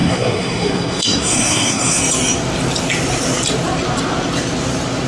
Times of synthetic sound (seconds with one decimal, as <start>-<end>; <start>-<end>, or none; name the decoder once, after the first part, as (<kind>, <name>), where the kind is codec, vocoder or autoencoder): 0.0-2.0 (codec, SNAC)

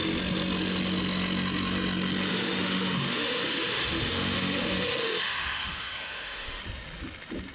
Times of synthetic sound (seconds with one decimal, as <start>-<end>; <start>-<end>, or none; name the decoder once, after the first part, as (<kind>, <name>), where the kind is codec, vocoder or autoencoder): 2.3-6.6 (autoencoder, DAC-VAE)

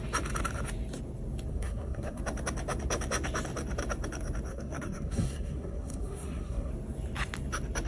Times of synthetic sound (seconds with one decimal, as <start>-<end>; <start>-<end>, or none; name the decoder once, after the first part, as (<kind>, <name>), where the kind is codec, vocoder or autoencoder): 1.5-2.2 (codec, SNAC); 4.5-6.7

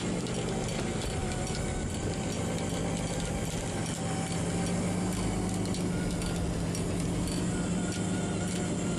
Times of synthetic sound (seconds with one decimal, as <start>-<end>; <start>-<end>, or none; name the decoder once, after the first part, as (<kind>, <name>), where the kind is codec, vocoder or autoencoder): none

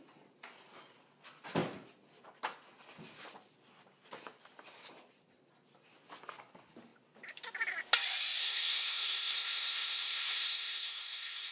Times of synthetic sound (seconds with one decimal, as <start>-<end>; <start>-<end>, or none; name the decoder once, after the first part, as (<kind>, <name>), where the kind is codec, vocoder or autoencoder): 8.4-11.5 (codec, SNAC)

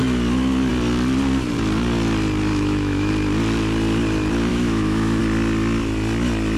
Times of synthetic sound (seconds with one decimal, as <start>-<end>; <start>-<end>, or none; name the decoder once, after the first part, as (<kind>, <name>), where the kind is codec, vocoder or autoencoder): 2.5-3.1 (autoencoder, DAC-VAE); 4.5-5.2